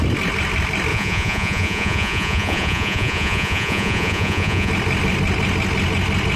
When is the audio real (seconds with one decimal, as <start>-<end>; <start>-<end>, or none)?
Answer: 0.0-0.9; 4.7-6.4